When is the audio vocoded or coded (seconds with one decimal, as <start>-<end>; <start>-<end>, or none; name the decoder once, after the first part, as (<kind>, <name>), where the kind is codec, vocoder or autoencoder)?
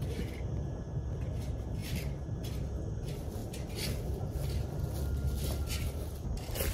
none